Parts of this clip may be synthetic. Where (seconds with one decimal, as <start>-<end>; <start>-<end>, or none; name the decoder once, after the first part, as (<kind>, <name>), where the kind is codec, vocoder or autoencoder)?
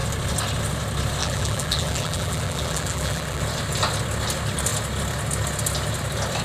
1.2-3.4 (vocoder, BigVGAN v2)